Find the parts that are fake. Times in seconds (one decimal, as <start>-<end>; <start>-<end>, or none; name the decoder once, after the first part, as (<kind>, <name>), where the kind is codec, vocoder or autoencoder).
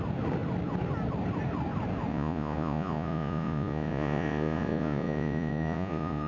2.1-6.3 (vocoder, Vocos)